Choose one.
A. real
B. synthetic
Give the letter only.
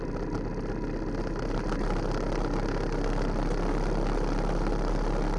A